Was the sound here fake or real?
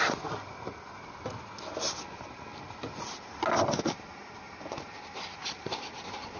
real